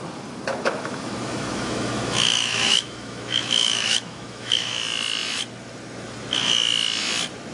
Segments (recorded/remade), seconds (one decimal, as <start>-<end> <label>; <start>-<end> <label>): 0.0-0.5 recorded; 0.5-4.7 remade; 4.7-7.5 recorded